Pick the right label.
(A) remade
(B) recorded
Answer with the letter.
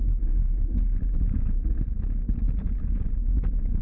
B